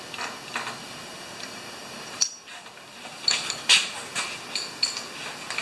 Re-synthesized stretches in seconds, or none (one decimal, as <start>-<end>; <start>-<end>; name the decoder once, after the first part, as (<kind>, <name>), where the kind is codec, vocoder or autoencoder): 0.8-4.2 (vocoder, BigVGAN v2)